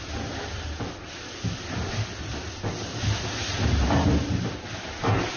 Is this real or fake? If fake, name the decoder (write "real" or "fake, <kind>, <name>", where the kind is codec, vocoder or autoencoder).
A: real